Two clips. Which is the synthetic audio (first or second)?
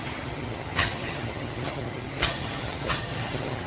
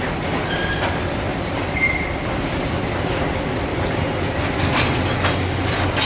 first